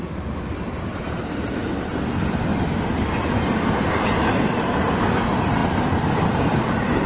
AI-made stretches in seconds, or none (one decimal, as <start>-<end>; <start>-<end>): 0.0-2.5; 3.3-5.6; 6.3-7.1